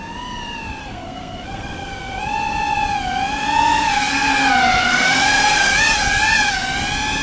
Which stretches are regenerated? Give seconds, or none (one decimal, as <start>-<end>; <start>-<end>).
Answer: 0.8-2.2; 4.8-5.7